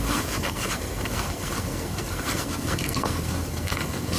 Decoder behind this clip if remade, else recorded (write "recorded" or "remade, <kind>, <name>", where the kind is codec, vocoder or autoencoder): remade, codec, SNAC